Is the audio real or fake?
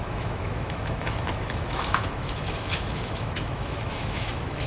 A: fake